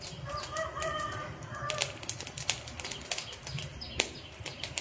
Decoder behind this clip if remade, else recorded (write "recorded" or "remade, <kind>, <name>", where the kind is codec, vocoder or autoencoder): recorded